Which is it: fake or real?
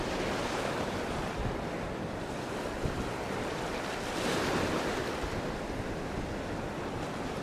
real